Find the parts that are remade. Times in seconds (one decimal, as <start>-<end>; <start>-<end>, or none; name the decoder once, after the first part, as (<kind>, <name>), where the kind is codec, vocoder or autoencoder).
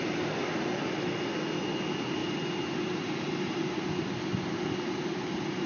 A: 2.2-3.9 (vocoder, BigVGAN v2)